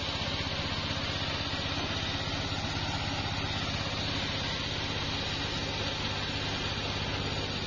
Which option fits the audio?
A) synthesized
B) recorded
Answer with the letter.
B